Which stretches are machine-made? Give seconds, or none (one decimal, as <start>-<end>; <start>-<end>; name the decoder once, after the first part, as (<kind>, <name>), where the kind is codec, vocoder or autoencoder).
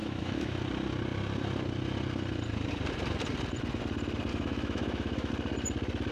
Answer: 0.0-0.6 (autoencoder, DAC-VAE); 4.3-5.3